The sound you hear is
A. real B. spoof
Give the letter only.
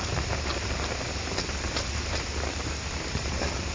B